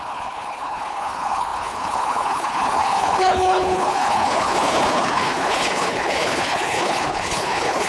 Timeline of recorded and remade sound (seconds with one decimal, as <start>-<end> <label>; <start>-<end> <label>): 0.0-7.9 remade